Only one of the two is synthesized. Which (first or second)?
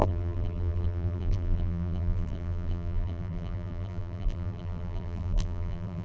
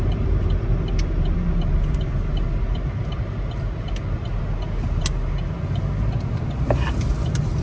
first